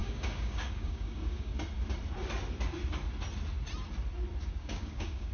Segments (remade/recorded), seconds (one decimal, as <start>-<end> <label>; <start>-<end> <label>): 0.0-1.5 remade; 1.5-4.5 recorded; 4.5-5.3 remade